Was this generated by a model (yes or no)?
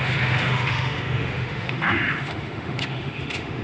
yes